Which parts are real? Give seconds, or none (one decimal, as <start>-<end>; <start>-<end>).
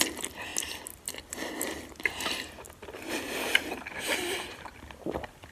0.0-5.5